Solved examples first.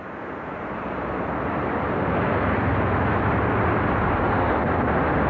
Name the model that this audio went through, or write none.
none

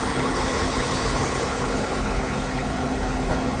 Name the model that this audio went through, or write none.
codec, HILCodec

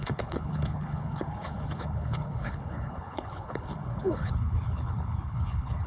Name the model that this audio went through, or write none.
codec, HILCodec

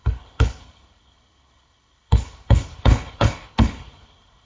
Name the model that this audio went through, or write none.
codec, HILCodec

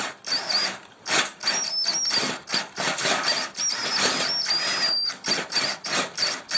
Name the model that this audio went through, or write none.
none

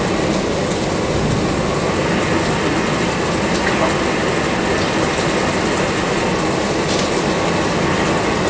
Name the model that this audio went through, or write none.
none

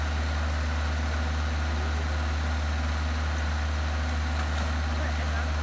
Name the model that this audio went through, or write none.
none